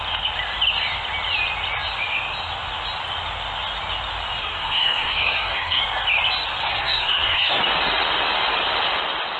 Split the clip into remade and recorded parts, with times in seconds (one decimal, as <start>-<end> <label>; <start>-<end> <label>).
0.0-4.4 recorded; 4.4-5.8 remade; 5.8-6.6 recorded; 6.6-7.6 remade; 7.6-9.4 recorded